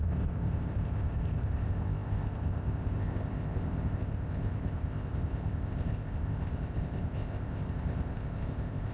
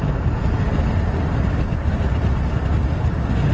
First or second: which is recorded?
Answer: second